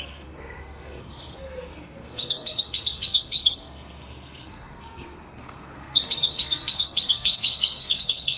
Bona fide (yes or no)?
no